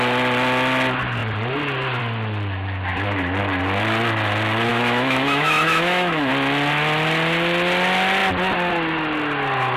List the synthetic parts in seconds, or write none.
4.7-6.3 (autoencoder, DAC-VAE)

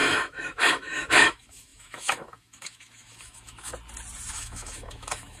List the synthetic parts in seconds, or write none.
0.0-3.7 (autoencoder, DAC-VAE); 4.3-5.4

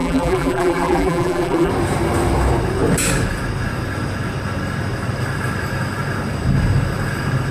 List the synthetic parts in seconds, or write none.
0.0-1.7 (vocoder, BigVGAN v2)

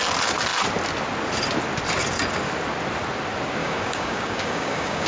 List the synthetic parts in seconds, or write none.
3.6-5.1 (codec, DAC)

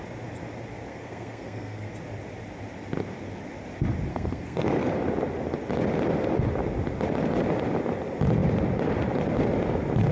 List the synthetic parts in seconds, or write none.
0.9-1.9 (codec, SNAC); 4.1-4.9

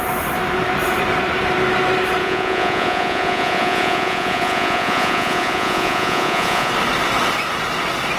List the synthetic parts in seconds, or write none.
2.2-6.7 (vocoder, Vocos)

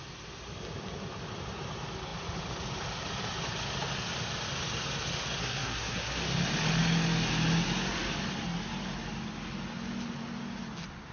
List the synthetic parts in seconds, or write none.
5.4-6.2 (codec, SNAC)